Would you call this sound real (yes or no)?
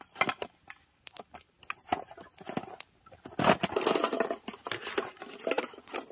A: yes